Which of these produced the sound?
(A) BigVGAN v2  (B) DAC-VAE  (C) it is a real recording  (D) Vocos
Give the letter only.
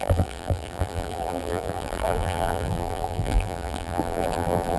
A